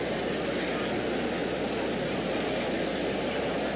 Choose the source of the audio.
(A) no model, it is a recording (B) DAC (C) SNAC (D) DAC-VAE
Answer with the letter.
A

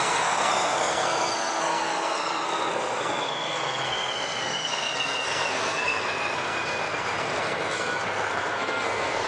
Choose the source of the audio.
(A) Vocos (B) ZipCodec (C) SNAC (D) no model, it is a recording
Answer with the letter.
C